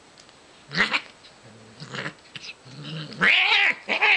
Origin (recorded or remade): recorded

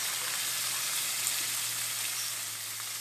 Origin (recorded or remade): recorded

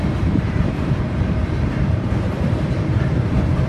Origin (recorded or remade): remade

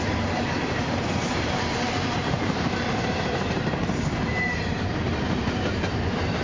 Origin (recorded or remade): remade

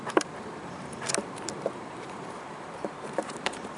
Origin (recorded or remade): remade